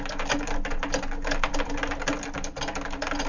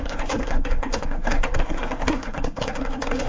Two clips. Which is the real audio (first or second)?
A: first